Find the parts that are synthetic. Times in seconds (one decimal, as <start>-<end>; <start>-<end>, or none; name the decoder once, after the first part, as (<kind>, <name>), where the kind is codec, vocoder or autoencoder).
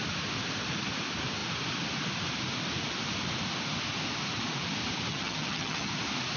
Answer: 5.1-5.9 (vocoder, HiFi-GAN)